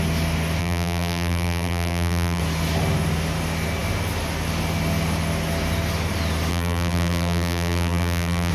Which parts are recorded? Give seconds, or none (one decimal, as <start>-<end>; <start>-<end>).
0.0-0.6; 2.4-6.5